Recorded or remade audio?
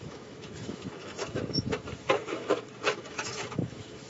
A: remade